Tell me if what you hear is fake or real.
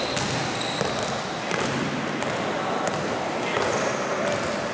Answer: real